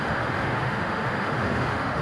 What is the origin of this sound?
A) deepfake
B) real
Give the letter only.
A